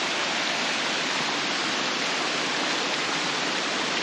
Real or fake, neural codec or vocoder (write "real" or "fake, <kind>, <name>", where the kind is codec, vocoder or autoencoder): real